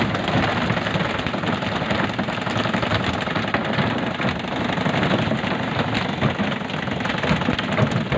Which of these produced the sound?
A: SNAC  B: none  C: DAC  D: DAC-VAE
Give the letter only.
B